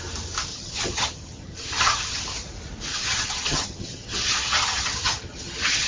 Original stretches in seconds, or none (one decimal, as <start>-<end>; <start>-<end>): 0.0-0.5; 2.2-2.9